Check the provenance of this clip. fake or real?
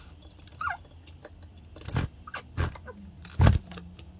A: real